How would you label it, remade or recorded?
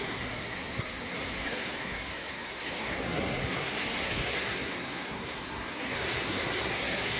remade